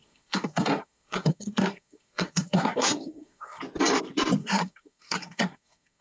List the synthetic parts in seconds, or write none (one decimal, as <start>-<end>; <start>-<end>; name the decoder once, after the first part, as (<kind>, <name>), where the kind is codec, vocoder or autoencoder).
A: 0.0-3.6 (codec, SNAC); 4.4-6.0